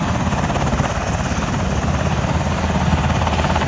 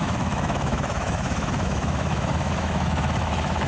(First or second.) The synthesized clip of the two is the second